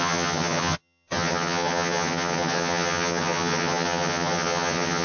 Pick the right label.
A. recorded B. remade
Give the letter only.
B